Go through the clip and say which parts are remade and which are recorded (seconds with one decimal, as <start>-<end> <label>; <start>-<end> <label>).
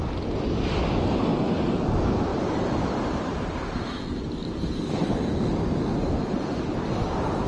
0.0-1.3 recorded; 1.3-1.9 remade; 1.9-2.3 recorded; 2.3-4.0 remade; 4.0-4.4 recorded; 4.4-5.1 remade; 5.1-7.5 recorded